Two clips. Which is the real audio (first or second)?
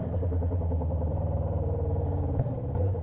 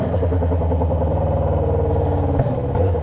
second